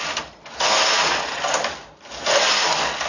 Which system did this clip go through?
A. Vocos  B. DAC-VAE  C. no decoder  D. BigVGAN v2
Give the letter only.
C